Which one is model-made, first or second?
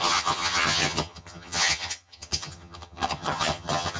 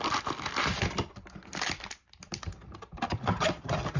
first